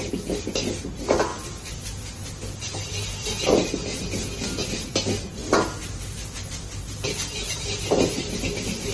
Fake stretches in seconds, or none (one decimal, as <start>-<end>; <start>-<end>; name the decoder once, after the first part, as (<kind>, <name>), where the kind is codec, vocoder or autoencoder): none